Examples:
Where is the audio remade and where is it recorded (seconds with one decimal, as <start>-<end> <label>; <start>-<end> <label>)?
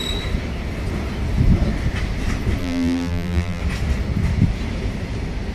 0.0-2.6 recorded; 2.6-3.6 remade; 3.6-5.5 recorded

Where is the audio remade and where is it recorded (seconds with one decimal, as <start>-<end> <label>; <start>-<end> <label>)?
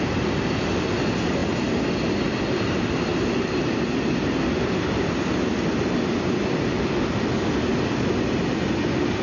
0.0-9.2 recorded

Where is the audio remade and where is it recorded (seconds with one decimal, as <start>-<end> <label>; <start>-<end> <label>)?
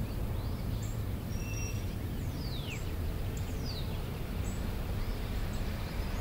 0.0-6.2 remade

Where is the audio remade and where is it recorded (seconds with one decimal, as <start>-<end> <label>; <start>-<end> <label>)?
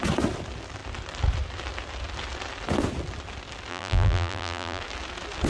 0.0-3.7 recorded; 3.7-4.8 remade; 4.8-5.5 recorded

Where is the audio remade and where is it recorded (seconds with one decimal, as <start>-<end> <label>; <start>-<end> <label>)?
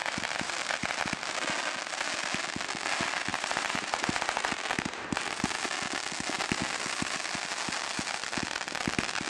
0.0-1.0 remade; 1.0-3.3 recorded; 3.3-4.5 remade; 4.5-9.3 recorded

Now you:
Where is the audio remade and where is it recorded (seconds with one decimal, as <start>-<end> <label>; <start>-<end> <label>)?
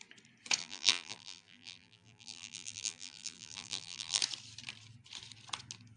0.0-0.6 recorded; 0.6-4.2 remade; 4.2-6.0 recorded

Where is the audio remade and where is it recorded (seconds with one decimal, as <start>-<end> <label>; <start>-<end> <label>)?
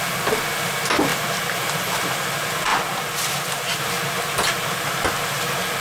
0.0-1.1 recorded; 1.1-2.1 remade; 2.1-2.7 recorded; 2.7-3.8 remade; 3.8-5.8 recorded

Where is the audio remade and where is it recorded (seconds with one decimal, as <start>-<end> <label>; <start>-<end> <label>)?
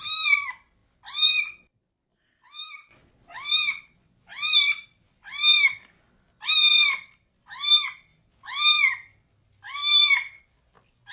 0.0-8.1 remade; 8.1-8.7 recorded; 8.7-11.1 remade